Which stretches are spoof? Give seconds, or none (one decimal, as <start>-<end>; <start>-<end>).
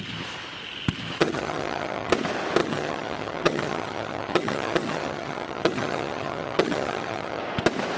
1.2-2.1; 2.6-7.4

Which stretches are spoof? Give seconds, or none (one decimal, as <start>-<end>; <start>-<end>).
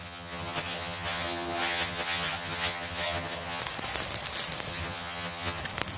0.0-3.6; 4.7-5.6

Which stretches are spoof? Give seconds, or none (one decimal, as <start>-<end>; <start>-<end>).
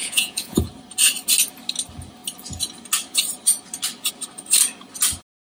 0.0-0.6